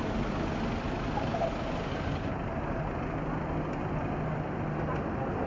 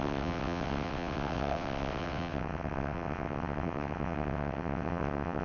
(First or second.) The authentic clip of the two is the first